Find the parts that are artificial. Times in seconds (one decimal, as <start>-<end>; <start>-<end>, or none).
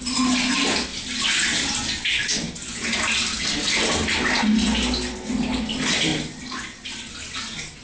none